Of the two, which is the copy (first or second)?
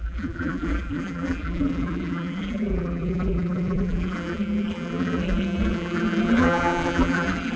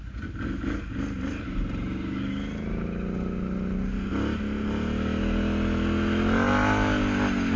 first